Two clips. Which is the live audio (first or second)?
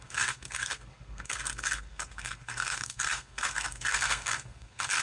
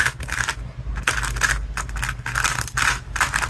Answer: second